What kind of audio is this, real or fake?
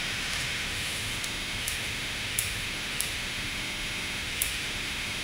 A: fake